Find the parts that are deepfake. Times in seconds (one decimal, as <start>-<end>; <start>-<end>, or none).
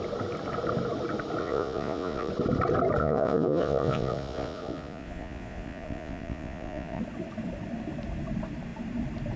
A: 1.4-2.3; 3.0-7.0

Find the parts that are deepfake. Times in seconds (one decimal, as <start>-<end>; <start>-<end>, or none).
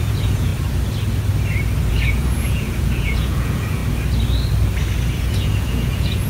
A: 0.0-0.5; 1.9-3.8; 5.2-6.3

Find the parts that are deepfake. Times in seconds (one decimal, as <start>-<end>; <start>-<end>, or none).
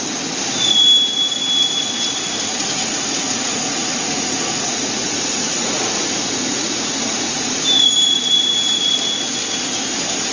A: 2.5-5.9; 6.5-7.5